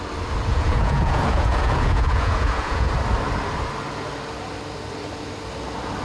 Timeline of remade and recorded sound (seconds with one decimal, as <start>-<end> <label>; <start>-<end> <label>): 0.0-0.5 recorded; 0.5-2.9 remade; 2.9-6.0 recorded